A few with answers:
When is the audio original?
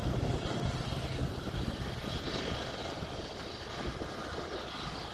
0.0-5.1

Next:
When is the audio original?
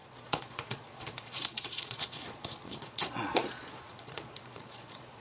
none